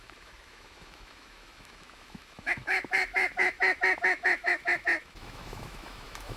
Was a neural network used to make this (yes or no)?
yes